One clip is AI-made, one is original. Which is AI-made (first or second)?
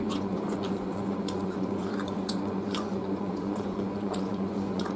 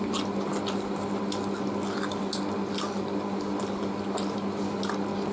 first